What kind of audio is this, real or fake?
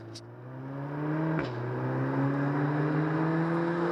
real